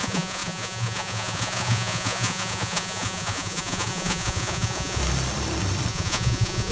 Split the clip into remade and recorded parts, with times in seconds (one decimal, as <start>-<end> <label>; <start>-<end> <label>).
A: 0.0-5.0 remade; 5.0-5.9 recorded; 5.9-6.7 remade